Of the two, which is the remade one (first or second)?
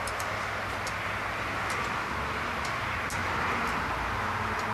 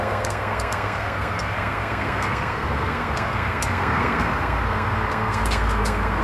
second